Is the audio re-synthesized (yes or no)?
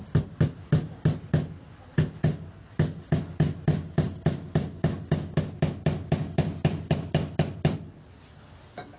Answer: no